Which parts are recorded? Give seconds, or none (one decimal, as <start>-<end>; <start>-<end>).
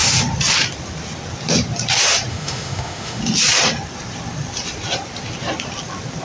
0.0-2.3; 3.2-6.2